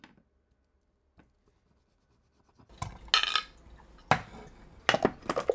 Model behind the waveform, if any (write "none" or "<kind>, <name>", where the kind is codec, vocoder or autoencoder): none